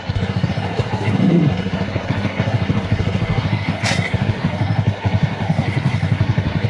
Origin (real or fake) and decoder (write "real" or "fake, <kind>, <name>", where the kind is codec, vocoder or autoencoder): fake, codec, SNAC